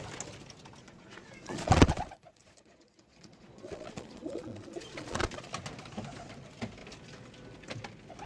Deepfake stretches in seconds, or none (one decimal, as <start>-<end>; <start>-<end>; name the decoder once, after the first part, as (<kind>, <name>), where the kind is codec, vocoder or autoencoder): 0.8-5.5 (vocoder, Vocos)